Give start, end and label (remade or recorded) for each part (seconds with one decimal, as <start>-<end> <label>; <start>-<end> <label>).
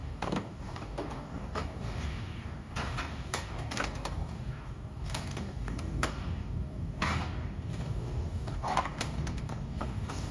0.0-10.3 remade